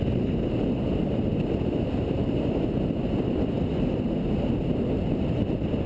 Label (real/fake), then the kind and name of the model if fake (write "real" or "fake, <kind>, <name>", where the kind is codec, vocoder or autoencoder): real